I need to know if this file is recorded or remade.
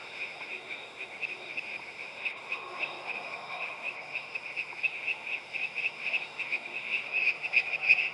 remade